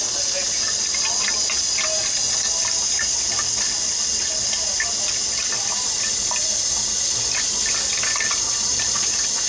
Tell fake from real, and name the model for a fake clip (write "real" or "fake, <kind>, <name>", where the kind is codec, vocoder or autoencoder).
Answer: real